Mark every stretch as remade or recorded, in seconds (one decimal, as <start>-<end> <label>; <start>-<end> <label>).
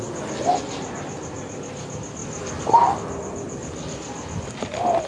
0.0-5.1 recorded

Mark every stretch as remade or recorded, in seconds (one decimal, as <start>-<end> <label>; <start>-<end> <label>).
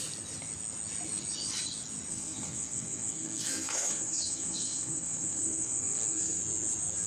0.0-2.1 recorded; 2.1-6.4 remade; 6.4-7.1 recorded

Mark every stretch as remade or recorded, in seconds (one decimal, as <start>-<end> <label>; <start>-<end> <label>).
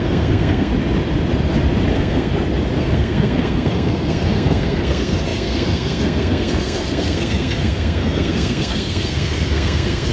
0.0-0.7 remade; 0.7-1.9 recorded; 1.9-2.3 remade; 2.3-2.8 recorded; 2.8-10.1 remade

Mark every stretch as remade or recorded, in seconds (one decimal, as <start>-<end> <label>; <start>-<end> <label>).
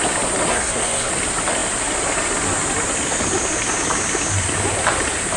0.0-0.5 recorded; 0.5-1.1 remade; 1.1-5.4 recorded